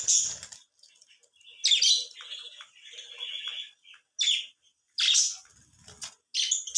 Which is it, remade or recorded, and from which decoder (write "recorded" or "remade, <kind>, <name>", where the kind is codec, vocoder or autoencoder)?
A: recorded